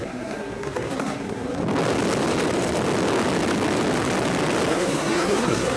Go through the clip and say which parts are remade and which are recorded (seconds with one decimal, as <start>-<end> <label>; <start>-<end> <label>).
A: 0.0-1.6 remade; 1.6-4.7 recorded; 4.7-5.8 remade